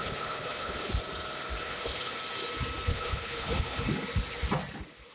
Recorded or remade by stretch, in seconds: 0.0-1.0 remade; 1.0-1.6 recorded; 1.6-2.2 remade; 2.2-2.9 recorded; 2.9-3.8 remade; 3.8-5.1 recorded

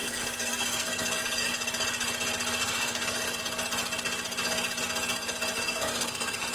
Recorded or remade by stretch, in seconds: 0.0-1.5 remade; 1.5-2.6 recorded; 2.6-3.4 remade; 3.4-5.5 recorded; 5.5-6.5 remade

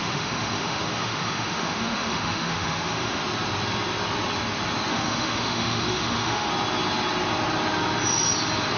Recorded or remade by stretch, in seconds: 0.0-3.2 remade; 3.2-4.9 recorded; 4.9-6.5 remade; 6.5-8.8 recorded

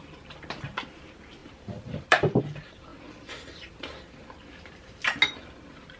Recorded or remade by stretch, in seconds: 0.0-1.4 recorded; 1.4-2.4 remade; 2.4-2.9 recorded; 2.9-4.5 remade; 4.5-6.0 recorded

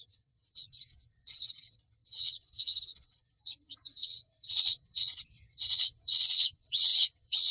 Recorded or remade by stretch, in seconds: 0.0-7.5 remade

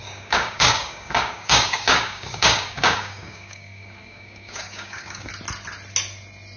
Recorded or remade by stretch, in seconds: 0.0-5.3 remade; 5.3-6.6 recorded